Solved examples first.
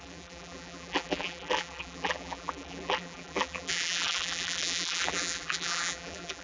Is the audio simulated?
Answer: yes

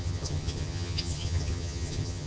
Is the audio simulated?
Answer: yes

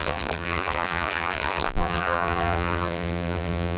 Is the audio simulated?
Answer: yes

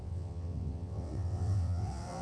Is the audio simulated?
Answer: yes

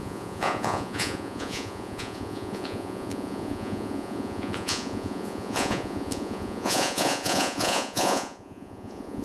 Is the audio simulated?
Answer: yes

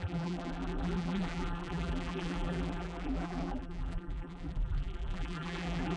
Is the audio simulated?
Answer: yes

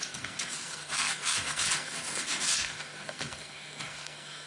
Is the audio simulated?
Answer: yes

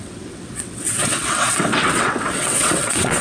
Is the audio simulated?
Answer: yes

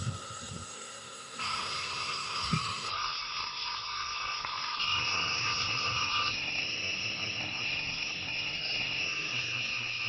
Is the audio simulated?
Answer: yes